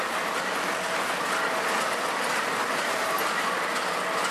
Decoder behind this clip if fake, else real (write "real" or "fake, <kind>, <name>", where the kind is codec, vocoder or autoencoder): real